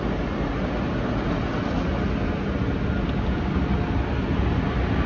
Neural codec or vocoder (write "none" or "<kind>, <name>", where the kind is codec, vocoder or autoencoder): none